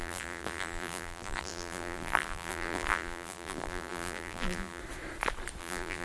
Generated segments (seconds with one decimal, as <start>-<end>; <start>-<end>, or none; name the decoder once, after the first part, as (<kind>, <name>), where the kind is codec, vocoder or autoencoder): 0.0-4.8 (vocoder, BigVGAN v2); 5.6-6.0